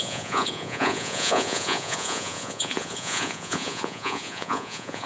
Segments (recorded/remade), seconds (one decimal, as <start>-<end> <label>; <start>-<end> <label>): 0.0-5.1 remade